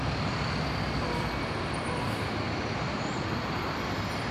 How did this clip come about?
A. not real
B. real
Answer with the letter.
B